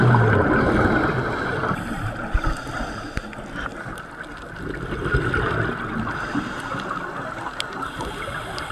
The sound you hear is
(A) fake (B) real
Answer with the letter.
B